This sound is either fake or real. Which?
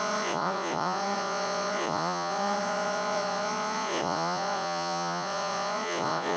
fake